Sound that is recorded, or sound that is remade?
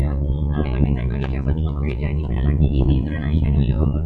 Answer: remade